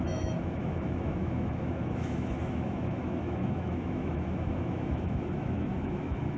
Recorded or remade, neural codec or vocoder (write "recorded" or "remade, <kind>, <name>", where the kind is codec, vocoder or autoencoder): remade, autoencoder, DAC-VAE